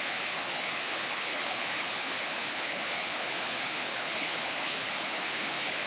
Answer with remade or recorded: remade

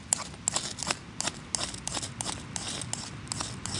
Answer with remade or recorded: recorded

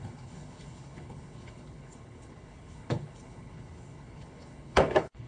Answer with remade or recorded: remade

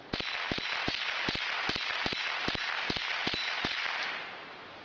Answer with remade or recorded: recorded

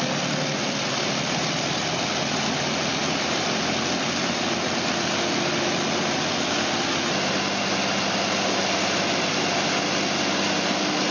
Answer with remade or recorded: recorded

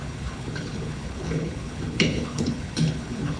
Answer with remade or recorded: remade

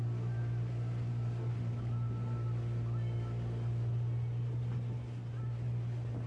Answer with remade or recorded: recorded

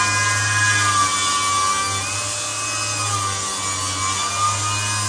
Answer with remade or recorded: recorded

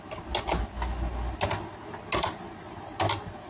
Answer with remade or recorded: recorded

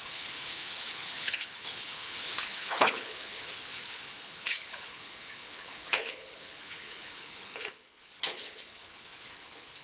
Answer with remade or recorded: remade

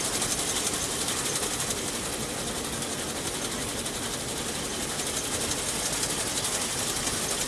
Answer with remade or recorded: recorded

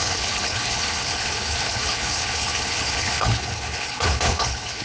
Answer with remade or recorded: remade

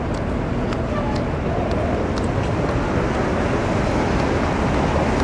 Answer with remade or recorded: recorded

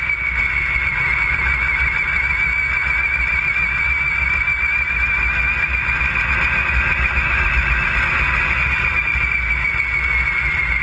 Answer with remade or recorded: recorded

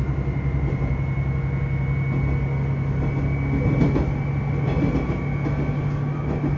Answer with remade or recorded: recorded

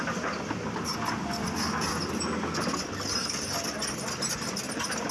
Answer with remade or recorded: recorded